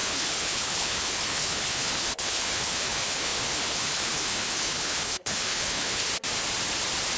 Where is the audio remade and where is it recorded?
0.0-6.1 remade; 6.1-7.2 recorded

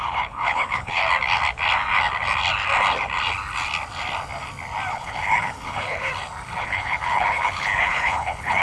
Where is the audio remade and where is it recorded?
0.0-1.0 remade; 1.0-4.9 recorded; 4.9-6.1 remade; 6.1-6.6 recorded; 6.6-8.6 remade

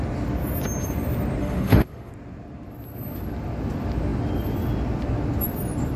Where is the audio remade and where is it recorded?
0.0-1.4 recorded; 1.4-2.1 remade; 2.1-6.0 recorded

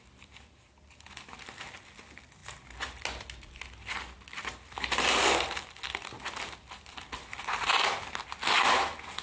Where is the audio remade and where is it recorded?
0.0-9.2 recorded

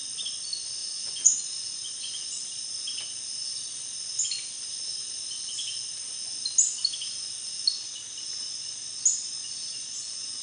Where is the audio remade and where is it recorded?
0.0-0.8 recorded; 0.8-2.3 remade; 2.3-9.4 recorded; 9.4-10.4 remade